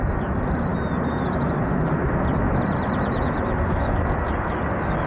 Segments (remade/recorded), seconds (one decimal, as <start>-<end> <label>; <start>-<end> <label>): 0.0-5.1 recorded